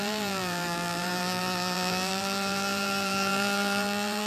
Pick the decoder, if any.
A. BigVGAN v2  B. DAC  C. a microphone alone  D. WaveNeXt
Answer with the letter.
A